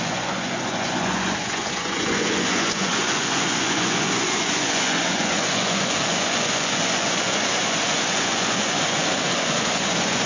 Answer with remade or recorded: remade